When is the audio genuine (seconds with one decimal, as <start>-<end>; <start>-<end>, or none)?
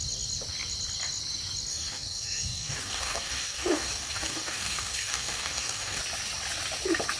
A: 0.0-1.7; 6.0-7.2